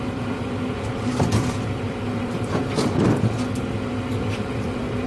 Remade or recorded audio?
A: remade